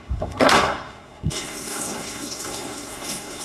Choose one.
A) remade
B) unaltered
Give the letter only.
A